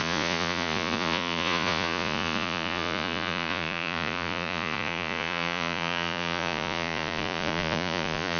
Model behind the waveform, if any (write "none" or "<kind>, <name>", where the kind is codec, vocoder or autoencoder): vocoder, Vocos